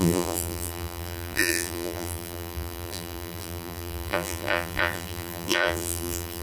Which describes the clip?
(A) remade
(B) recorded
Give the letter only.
A